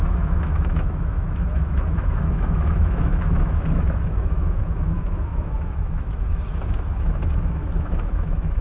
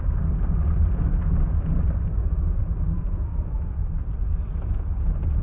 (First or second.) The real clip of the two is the second